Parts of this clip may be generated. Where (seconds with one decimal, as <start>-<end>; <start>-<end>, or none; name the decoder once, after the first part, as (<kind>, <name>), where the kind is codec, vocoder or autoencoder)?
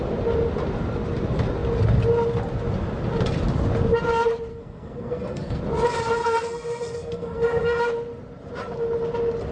4.5-5.6 (codec, SNAC); 6.2-7.8